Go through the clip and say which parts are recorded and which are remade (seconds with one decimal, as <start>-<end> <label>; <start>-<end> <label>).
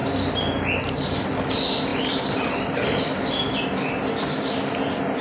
0.0-5.2 recorded